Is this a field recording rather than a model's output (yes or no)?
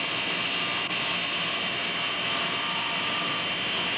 yes